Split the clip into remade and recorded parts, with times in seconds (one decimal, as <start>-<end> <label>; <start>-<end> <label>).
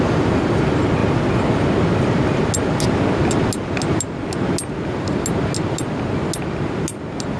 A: 0.0-7.4 recorded